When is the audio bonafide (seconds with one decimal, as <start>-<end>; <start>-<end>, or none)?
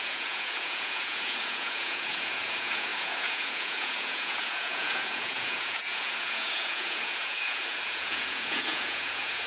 none